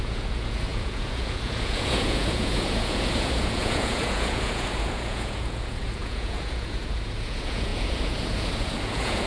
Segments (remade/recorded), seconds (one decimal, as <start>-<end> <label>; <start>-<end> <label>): 0.0-9.3 remade